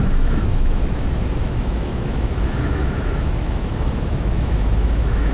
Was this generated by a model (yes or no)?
yes